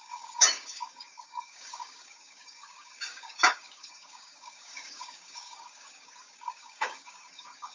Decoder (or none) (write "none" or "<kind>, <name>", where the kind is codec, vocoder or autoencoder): codec, DAC